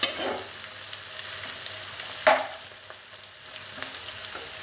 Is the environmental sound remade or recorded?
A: recorded